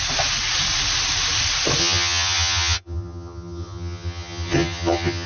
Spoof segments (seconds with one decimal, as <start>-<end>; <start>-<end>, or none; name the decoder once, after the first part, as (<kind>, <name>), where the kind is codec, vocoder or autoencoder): 1.8-5.3 (vocoder, HiFi-GAN)

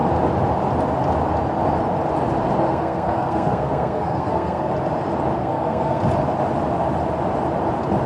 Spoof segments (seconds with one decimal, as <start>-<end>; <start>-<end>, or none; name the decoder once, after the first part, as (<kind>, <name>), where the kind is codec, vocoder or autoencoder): 2.7-4.7 (codec, SNAC); 5.4-6.0

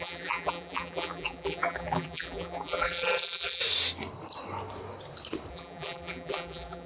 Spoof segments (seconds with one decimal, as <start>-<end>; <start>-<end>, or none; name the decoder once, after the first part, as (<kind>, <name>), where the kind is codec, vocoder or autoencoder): 0.0-3.6 (vocoder, BigVGAN v2); 5.5-6.9